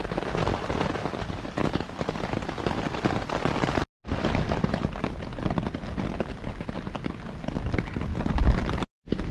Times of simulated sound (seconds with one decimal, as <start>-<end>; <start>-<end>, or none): 1.6-2.2